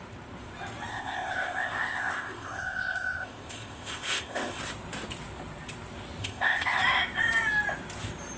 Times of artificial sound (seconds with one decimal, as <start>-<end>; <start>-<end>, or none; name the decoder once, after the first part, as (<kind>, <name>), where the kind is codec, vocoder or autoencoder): 0.9-4.6 (codec, ZipCodec); 6.2-6.8